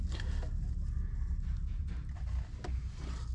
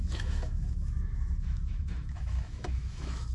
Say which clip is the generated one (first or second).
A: second